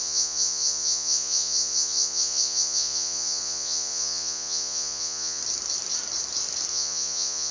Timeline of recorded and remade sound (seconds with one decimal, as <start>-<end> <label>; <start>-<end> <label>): 0.0-5.4 remade; 5.4-6.7 recorded; 6.7-7.5 remade